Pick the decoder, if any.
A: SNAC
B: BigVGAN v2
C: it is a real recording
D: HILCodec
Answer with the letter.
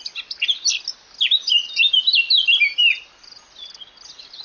C